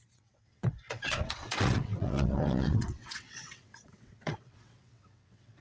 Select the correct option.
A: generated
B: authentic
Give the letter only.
A